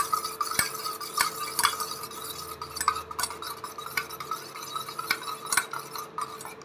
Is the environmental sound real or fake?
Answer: real